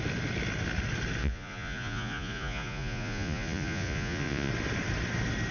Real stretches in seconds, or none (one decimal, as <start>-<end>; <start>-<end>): 0.0-1.2; 4.5-5.5